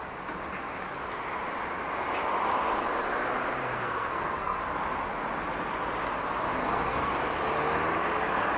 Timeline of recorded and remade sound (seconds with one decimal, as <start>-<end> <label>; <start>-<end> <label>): 0.0-3.6 recorded; 3.6-4.6 remade; 4.6-6.6 recorded; 6.6-7.1 remade; 7.1-8.6 recorded

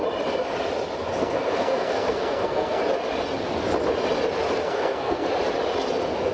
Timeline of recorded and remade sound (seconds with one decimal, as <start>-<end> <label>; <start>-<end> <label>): 0.0-1.2 recorded; 1.2-2.8 remade; 2.8-4.6 recorded; 4.6-5.3 remade; 5.3-6.3 recorded

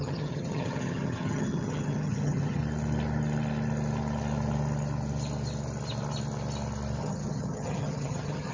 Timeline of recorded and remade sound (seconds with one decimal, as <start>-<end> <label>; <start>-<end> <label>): 0.0-2.6 remade; 2.6-7.0 recorded; 7.0-8.5 remade

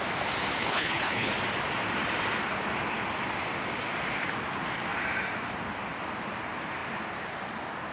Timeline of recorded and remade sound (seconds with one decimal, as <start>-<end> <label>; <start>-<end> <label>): 0.0-0.6 recorded; 0.6-1.3 remade; 1.3-7.9 recorded

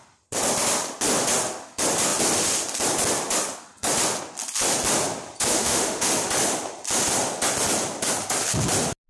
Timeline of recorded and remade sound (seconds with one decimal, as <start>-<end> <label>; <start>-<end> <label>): 0.0-5.5 recorded; 5.5-6.1 remade; 6.1-9.1 recorded